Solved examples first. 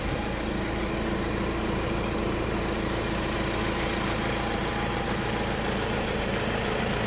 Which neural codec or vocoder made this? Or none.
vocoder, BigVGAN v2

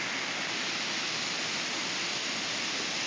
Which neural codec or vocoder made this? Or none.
none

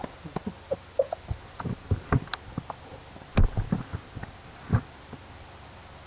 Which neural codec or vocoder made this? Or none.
none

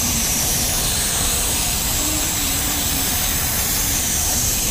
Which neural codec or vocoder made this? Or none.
vocoder, BigVGAN v2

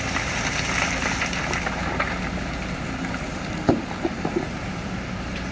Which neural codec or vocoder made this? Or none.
vocoder, BigVGAN v2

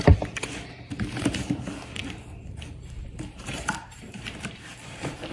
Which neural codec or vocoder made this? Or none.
vocoder, BigVGAN v2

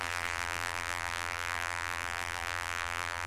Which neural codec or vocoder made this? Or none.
vocoder, BigVGAN v2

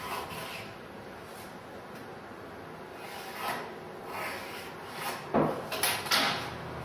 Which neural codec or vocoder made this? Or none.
none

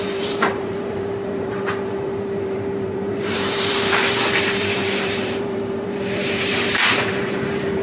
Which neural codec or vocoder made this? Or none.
vocoder, BigVGAN v2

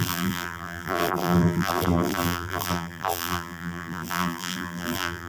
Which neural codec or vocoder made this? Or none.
vocoder, BigVGAN v2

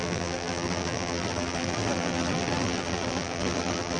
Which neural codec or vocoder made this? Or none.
vocoder, BigVGAN v2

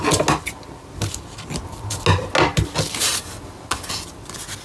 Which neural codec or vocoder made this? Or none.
none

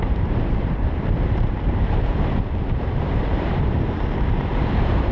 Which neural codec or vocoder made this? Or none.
vocoder, BigVGAN v2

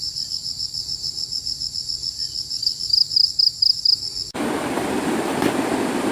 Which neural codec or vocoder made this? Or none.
vocoder, BigVGAN v2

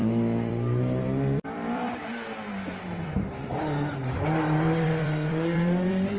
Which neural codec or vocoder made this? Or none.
vocoder, BigVGAN v2